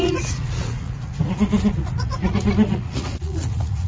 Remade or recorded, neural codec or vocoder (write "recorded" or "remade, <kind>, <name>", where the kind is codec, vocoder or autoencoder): remade, vocoder, Vocos